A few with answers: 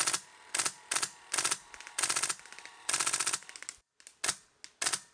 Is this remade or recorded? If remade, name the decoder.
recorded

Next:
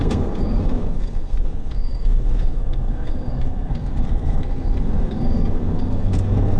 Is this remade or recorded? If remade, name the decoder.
remade, codec, SNAC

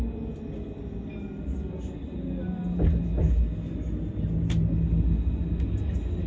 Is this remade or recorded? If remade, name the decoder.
recorded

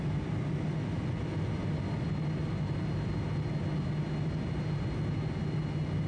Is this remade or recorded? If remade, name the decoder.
recorded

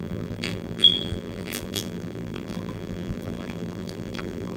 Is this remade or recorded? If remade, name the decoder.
remade, vocoder, BigVGAN v2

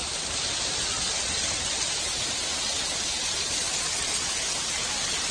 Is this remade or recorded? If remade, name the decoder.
recorded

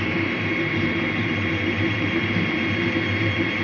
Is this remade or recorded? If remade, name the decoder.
remade, vocoder, BigVGAN v2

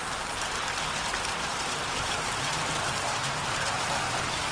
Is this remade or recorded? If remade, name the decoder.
remade, vocoder, BigVGAN v2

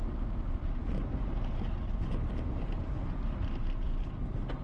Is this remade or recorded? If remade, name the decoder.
recorded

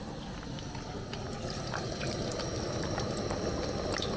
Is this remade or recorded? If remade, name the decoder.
recorded